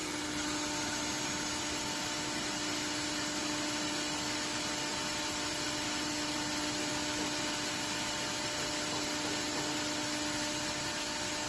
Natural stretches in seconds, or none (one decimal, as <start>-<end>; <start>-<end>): 0.0-11.5

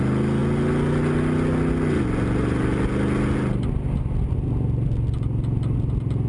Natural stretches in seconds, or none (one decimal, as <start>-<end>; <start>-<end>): 0.0-6.3

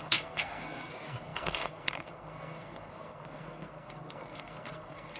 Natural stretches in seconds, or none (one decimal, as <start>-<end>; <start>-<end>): none

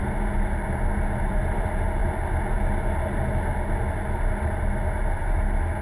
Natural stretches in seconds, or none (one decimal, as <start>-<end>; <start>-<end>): 0.0-5.8

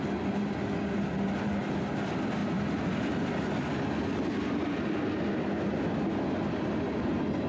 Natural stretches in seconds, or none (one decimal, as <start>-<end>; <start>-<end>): 0.0-7.5